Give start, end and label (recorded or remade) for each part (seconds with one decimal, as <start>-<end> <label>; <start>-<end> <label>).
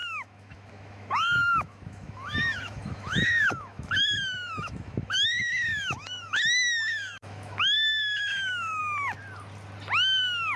0.0-8.8 remade; 8.8-10.6 recorded